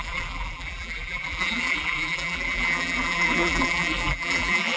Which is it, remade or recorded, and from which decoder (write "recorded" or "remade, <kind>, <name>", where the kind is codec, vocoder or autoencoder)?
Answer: remade, vocoder, BigVGAN v2